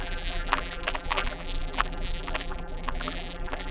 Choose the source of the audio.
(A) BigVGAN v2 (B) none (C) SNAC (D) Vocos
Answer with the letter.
A